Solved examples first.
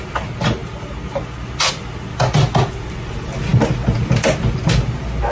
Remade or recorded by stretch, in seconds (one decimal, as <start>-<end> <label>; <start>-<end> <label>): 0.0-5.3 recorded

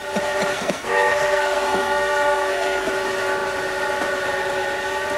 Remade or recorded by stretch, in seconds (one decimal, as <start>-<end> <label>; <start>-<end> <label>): 0.0-0.5 recorded; 0.5-2.9 remade; 2.9-5.2 recorded

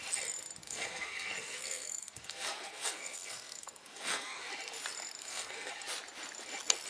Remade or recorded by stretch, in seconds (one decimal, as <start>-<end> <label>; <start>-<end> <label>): 0.0-0.6 recorded; 0.6-4.5 remade; 4.5-5.2 recorded; 5.2-5.7 remade; 5.7-6.9 recorded